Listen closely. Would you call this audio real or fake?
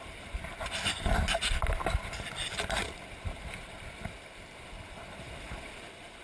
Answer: real